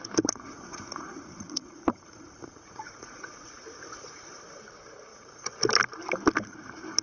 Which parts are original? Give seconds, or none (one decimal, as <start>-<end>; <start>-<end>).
0.0-0.5; 4.6-5.1; 5.6-7.0